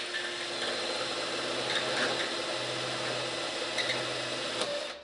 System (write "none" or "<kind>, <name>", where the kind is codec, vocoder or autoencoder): none